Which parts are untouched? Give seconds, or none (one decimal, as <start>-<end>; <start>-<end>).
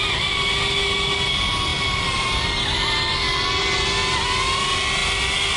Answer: 0.0-5.6